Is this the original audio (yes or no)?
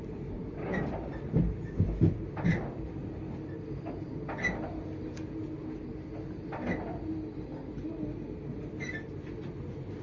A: yes